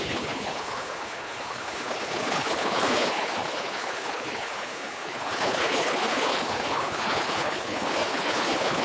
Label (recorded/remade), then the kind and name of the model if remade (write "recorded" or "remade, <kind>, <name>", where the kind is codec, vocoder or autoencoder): remade, codec, HILCodec